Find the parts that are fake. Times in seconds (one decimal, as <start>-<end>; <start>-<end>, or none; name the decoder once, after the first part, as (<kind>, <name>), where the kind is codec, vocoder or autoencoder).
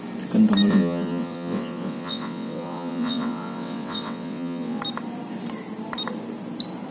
0.7-4.8 (vocoder, WaveNeXt)